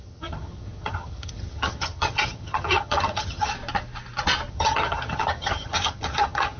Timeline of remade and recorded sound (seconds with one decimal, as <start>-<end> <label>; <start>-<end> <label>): 0.0-3.5 remade; 3.5-4.5 recorded; 4.5-6.6 remade